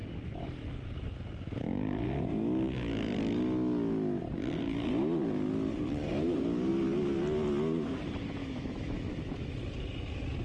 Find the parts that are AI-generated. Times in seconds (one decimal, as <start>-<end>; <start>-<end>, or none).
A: 8.4-9.5